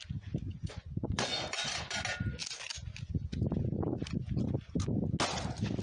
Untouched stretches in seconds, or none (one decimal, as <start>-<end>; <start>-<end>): 0.0-0.5; 2.0-5.8

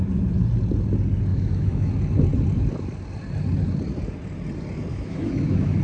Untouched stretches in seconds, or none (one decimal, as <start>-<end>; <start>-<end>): 0.0-1.3; 1.9-4.9

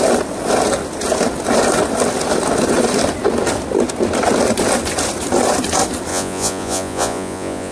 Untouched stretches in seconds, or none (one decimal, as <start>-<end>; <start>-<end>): 0.0-6.1

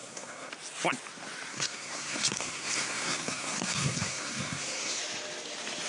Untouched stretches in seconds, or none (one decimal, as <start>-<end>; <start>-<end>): 0.5-1.5; 5.0-5.9

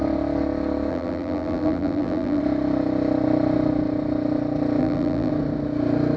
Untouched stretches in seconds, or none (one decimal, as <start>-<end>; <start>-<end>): 0.0-0.9; 2.4-4.8; 5.3-6.2